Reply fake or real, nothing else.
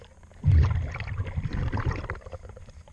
real